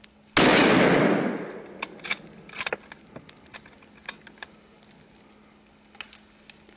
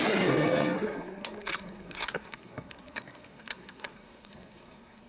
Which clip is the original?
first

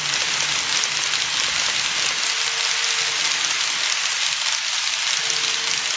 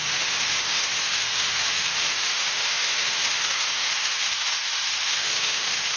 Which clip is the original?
first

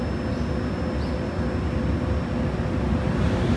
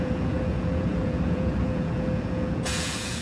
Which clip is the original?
first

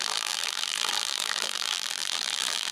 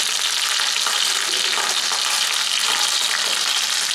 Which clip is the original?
second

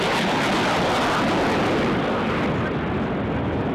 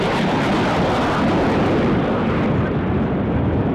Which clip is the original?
first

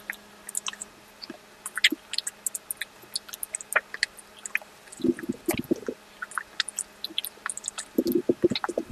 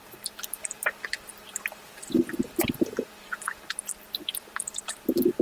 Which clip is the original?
first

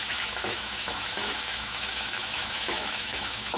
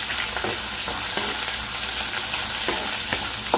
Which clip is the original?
second